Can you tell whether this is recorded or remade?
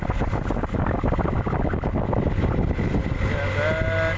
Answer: recorded